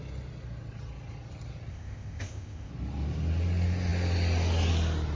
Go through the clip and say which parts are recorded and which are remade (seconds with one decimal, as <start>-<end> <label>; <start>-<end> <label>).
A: 0.0-1.7 recorded; 1.7-2.7 remade; 2.7-5.2 recorded